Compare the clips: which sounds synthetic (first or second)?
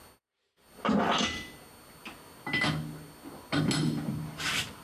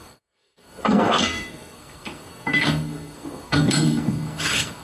second